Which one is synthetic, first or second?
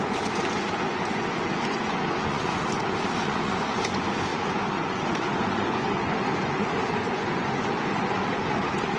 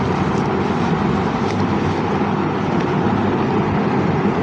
first